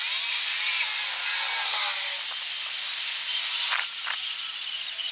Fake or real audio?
real